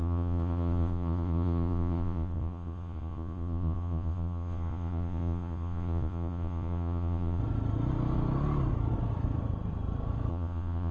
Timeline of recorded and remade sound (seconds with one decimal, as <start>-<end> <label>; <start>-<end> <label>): 0.0-7.4 remade; 7.4-10.3 recorded; 10.3-10.9 remade